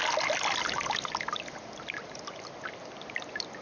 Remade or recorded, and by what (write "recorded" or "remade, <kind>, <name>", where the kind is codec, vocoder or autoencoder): recorded